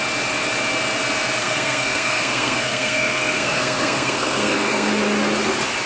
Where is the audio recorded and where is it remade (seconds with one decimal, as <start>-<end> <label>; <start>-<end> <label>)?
0.0-1.4 recorded; 1.4-4.9 remade; 4.9-5.9 recorded